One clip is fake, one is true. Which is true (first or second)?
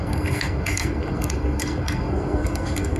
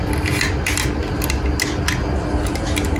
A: second